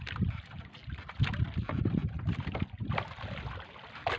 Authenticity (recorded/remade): recorded